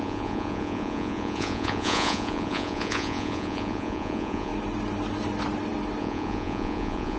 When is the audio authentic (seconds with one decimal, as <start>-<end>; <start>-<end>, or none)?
4.5-6.0